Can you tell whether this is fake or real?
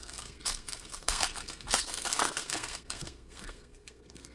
fake